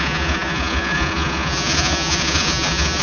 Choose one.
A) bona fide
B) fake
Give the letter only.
B